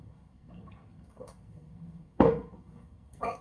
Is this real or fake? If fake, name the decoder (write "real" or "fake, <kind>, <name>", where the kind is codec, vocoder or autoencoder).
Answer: fake, codec, SNAC